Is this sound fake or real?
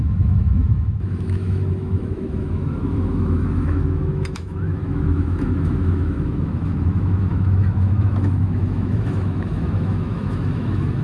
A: fake